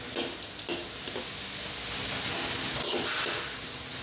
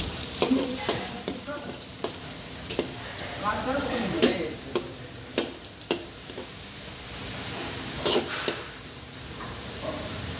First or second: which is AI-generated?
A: second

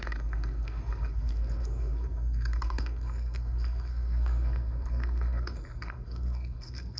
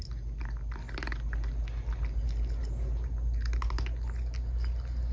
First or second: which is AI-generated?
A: first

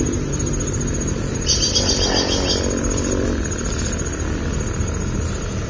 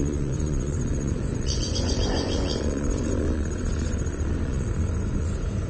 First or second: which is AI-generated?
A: second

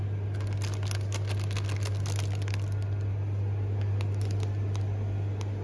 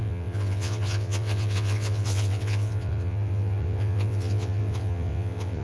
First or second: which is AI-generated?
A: second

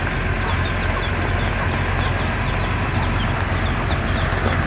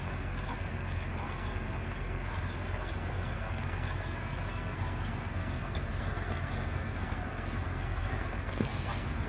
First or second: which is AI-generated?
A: second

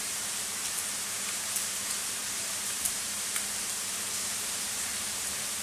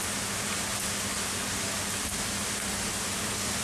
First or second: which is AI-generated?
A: first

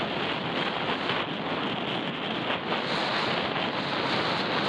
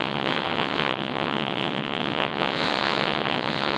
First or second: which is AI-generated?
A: second